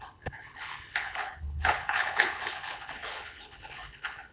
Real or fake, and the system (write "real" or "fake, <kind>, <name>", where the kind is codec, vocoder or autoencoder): fake, codec, HILCodec